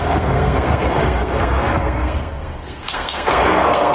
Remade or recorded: remade